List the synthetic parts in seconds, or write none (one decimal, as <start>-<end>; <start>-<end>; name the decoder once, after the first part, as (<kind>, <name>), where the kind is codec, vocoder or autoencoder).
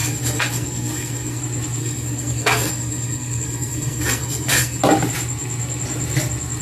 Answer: 0.0-1.4 (codec, SNAC); 1.8-4.8